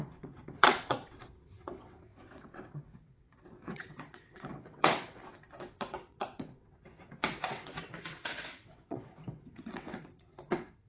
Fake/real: fake